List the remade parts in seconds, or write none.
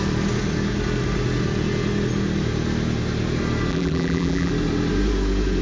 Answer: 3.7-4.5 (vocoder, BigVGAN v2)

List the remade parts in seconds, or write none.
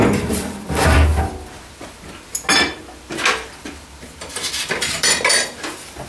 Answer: 0.0-1.1 (vocoder, BigVGAN v2); 4.8-6.1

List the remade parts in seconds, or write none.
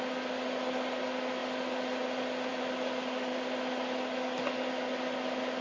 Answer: none